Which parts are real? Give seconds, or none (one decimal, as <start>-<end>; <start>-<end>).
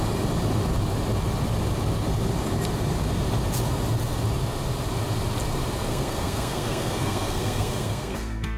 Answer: 0.0-5.9